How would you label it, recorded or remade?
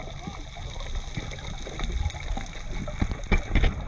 recorded